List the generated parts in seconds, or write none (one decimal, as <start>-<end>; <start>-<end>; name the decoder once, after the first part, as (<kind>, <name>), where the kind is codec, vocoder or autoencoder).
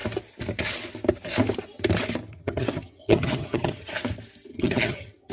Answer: 2.3-3.9 (vocoder, HiFi-GAN); 4.5-5.3